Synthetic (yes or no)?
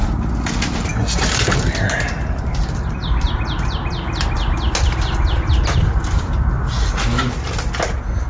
no